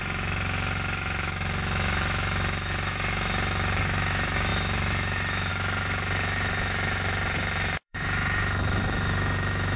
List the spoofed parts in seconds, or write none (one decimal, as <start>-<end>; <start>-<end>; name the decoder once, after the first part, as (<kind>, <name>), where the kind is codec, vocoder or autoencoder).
0.0-9.8 (autoencoder, DAC-VAE)